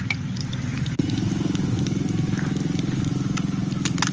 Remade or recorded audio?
recorded